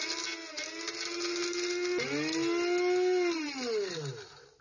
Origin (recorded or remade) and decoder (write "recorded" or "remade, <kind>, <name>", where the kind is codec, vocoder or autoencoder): recorded